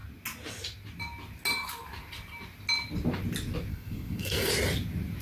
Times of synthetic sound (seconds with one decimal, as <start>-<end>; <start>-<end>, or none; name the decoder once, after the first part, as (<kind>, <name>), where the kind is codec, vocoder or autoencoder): 3.7-4.5 (codec, SNAC)